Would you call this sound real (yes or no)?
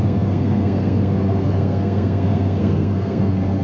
no